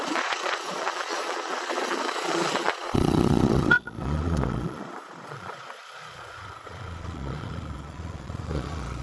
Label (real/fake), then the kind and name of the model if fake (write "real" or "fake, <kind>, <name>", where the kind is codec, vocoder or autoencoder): fake, vocoder, Vocos